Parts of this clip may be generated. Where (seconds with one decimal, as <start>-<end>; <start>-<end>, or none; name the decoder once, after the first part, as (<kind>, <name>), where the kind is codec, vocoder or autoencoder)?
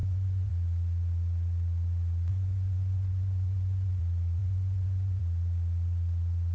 0.0-0.5 (vocoder, Vocos); 2.3-4.0; 4.4-5.2